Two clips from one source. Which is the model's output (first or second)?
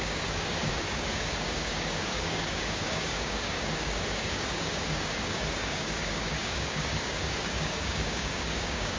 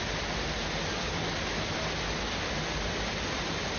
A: first